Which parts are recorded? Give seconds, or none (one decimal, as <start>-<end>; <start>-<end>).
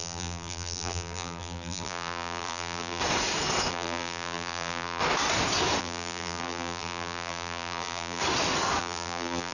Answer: 3.0-3.7; 5.0-5.8; 8.2-8.8